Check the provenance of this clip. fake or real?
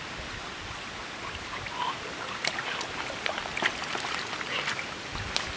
real